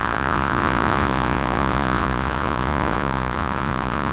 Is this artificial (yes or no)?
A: yes